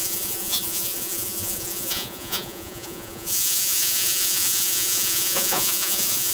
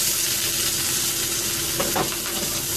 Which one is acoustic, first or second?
second